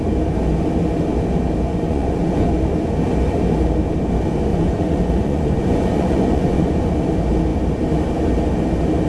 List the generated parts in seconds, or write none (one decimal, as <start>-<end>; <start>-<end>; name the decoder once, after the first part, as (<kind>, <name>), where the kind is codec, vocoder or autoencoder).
1.7-2.5 (vocoder, Vocos); 4.5-6.9